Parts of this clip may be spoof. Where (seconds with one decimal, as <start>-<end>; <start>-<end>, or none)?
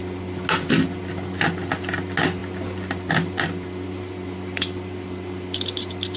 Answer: 2.4-6.2